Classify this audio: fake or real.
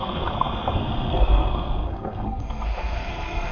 fake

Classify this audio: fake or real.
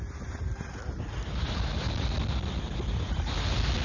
real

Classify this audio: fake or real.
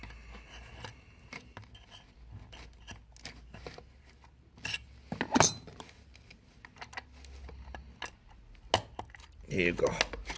real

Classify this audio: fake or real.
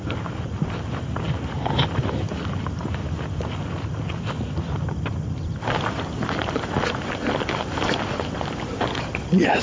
real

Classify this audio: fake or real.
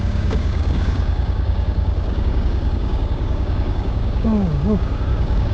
fake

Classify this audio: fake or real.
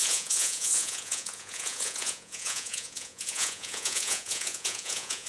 fake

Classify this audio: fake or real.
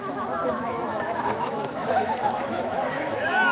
fake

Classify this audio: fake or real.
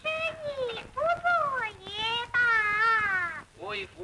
real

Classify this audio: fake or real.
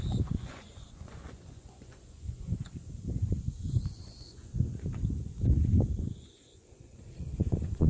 fake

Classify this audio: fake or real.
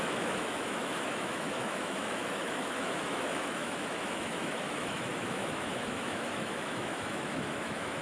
fake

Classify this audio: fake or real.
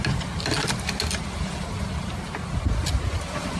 real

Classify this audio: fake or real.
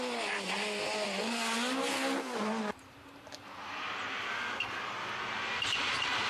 real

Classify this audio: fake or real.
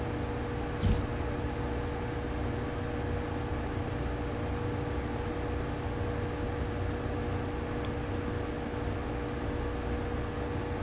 real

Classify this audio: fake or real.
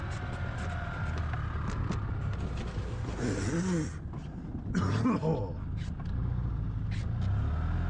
real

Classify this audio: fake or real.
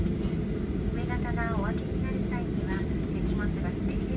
real